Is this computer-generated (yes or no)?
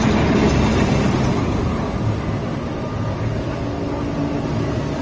no